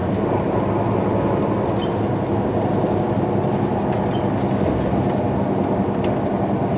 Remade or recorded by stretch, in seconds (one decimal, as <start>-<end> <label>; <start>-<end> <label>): 0.0-0.6 remade; 0.6-6.8 recorded